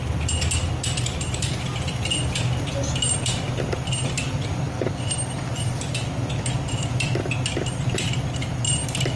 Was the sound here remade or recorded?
recorded